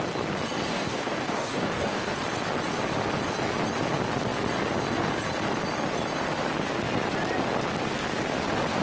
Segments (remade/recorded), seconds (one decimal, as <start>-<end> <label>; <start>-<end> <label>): 0.0-0.7 recorded; 0.7-2.0 remade; 2.0-8.8 recorded